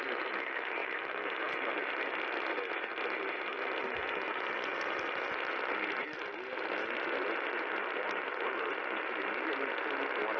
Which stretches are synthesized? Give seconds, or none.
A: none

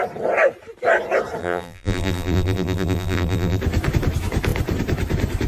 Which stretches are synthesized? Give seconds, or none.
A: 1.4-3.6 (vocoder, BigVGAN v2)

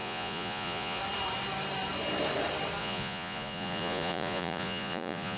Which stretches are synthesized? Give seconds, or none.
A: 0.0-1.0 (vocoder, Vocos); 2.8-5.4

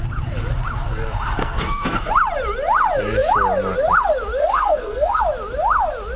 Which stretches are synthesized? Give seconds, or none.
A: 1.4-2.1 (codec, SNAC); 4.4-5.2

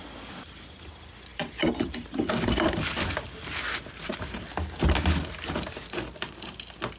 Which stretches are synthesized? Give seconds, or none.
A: 1.3-4.8 (vocoder, BigVGAN v2)

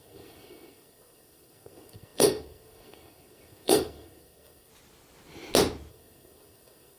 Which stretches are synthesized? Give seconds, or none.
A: 0.0-4.7 (codec, SNAC); 5.9-7.0

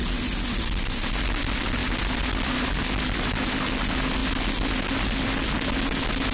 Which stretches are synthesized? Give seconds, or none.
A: 1.8-2.7 (vocoder, BigVGAN v2)

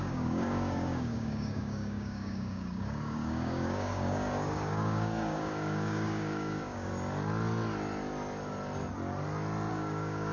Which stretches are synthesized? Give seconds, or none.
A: 0.0-6.9 (codec, DAC); 9.7-10.3